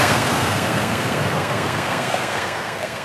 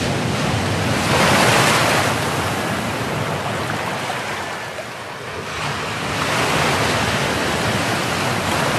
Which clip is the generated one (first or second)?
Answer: first